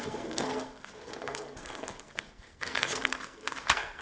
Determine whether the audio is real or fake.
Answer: fake